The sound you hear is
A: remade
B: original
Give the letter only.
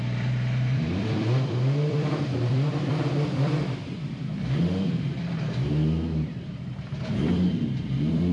A